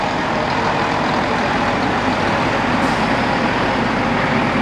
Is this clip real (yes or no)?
no